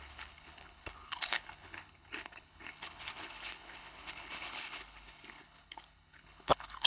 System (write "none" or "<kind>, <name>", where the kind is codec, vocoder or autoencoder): codec, HILCodec